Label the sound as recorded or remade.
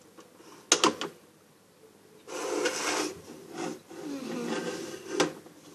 recorded